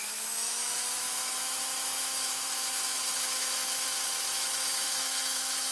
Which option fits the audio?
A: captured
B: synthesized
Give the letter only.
B